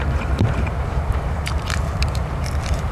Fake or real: fake